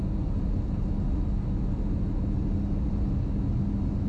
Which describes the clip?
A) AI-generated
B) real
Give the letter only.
B